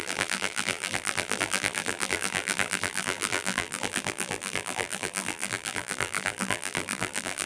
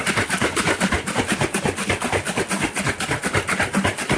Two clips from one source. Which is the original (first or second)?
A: second